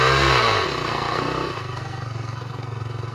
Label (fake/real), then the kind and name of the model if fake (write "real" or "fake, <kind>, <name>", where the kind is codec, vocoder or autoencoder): fake, codec, SNAC